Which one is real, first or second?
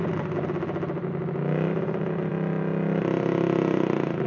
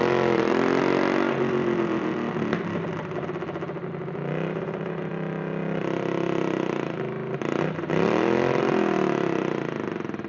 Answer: first